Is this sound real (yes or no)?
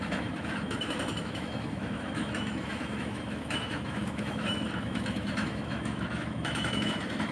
no